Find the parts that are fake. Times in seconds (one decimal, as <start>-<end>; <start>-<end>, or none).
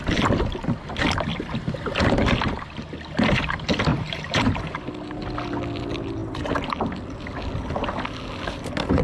3.9-4.7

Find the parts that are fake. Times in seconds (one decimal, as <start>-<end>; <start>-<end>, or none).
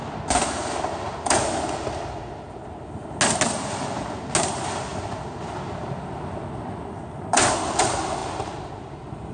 8.2-9.3